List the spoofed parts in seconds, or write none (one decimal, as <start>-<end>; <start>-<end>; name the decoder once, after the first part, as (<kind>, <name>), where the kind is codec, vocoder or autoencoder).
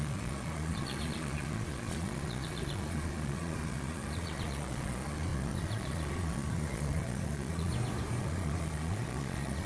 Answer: 0.0-7.7 (vocoder, Vocos); 8.2-9.7